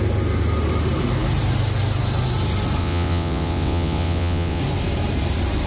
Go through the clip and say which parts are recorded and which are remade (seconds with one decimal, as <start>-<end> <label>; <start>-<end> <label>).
0.0-2.8 recorded; 2.8-4.6 remade; 4.6-5.7 recorded